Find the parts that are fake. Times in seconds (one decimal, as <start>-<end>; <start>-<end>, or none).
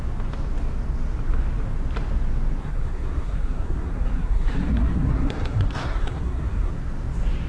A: 2.6-6.7